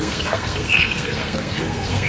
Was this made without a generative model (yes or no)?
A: no